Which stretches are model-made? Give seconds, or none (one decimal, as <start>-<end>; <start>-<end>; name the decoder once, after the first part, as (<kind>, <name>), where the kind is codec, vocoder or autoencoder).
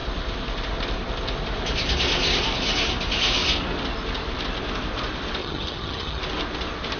5.4-6.2 (vocoder, HiFi-GAN)